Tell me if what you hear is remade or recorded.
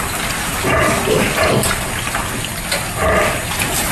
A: recorded